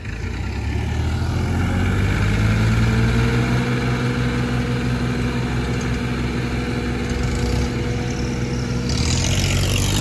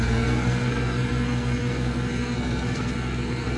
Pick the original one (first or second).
first